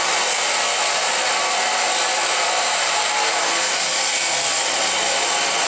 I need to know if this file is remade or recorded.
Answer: recorded